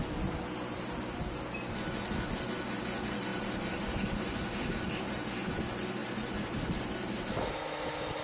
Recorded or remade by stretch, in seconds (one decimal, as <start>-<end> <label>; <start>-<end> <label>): 0.0-3.3 recorded; 3.3-5.6 remade; 5.6-6.0 recorded; 6.0-7.6 remade; 7.6-8.2 recorded